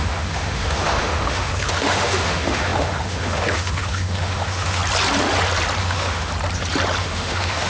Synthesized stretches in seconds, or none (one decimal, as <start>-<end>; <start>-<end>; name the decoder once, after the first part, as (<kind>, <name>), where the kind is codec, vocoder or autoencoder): 0.0-4.8 (autoencoder, DAC-VAE); 5.8-6.3; 7.0-7.7